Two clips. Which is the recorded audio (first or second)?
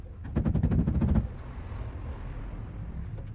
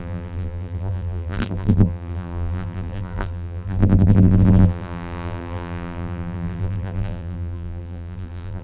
first